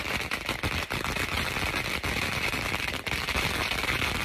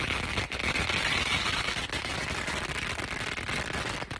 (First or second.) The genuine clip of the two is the second